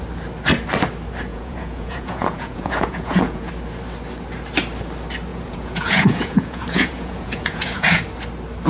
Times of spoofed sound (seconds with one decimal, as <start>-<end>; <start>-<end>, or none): 1.3-3.5; 5.3-8.0